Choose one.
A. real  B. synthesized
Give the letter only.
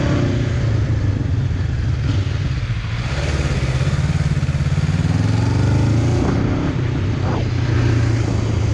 A